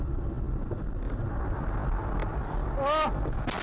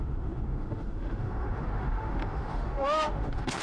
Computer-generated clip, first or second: second